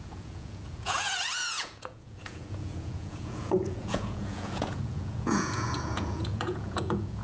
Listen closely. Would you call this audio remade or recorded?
remade